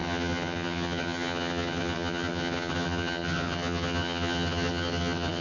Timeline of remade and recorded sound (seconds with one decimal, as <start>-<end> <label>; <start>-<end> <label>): 0.0-5.4 remade